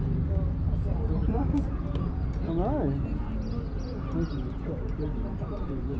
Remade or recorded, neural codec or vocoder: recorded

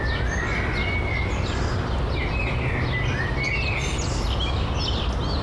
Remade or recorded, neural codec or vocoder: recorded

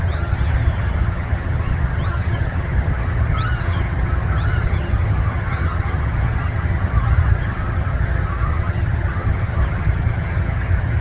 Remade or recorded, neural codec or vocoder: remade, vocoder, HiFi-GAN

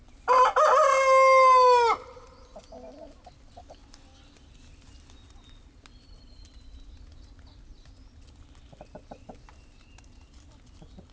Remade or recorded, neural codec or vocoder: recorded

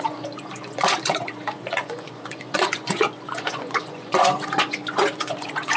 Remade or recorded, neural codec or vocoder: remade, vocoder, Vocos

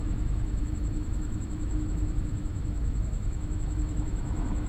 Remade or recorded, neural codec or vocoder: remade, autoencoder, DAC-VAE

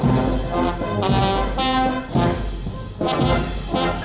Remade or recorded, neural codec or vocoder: recorded